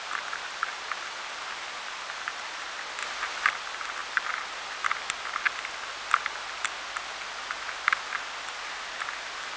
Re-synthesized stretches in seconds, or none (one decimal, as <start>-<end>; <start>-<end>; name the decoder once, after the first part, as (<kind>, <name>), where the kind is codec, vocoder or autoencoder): none